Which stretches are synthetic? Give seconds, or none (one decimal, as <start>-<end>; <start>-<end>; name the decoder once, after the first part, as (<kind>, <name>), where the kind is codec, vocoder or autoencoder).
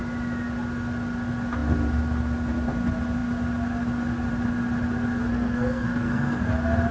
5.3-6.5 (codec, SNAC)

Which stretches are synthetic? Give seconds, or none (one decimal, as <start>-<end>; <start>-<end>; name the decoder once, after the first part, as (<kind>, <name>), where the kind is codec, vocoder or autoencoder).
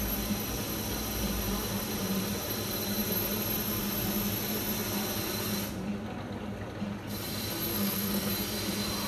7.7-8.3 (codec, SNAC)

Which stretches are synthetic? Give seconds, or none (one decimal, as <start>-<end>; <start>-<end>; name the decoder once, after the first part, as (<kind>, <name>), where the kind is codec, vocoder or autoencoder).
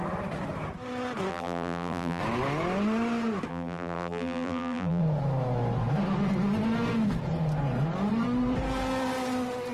1.3-2.2 (vocoder, BigVGAN v2); 3.5-5.0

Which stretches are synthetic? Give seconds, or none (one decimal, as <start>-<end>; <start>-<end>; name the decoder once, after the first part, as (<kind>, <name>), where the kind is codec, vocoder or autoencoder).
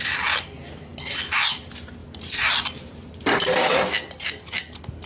2.0-3.8 (vocoder, BigVGAN v2)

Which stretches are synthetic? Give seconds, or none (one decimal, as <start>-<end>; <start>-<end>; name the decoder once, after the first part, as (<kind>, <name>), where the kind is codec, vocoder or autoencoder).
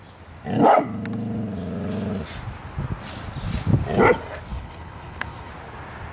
4.5-5.5 (codec, HILCodec)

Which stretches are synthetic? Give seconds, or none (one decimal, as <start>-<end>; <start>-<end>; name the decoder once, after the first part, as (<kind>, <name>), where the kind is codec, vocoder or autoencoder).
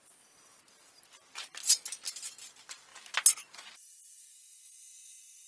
none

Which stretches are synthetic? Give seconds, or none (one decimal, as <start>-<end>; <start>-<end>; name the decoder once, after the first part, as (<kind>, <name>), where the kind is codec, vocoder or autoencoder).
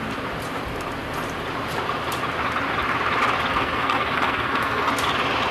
3.5-4.9 (codec, SNAC)